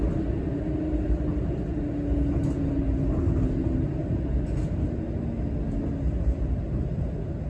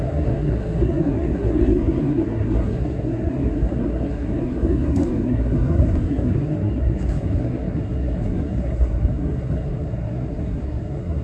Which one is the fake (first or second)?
second